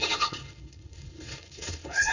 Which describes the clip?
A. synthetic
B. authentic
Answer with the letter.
A